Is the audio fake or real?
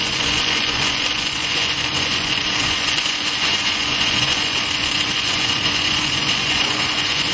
fake